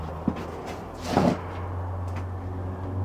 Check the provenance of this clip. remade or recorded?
recorded